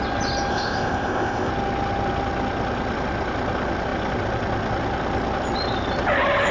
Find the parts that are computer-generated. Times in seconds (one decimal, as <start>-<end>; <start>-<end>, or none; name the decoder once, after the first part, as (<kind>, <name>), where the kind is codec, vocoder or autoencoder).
0.5-1.5 (codec, ZipCodec)